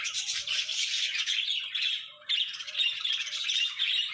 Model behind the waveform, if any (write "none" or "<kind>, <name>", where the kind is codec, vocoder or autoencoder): vocoder, BigVGAN v2